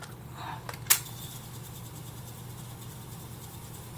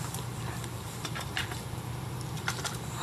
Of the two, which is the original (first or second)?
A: first